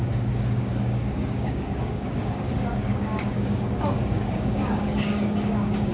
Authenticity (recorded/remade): remade